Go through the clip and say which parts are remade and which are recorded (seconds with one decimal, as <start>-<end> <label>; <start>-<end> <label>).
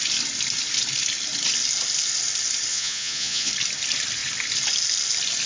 0.0-2.7 recorded; 2.7-3.5 remade; 3.5-5.5 recorded